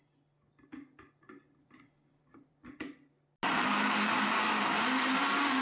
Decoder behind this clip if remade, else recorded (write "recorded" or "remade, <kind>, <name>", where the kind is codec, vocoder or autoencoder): recorded